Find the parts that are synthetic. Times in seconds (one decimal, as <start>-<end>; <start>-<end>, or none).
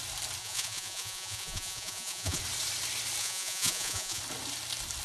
0.4-2.4; 3.2-4.2